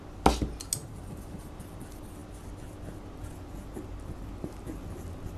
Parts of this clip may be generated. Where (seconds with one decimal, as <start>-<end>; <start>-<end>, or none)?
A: 0.8-1.6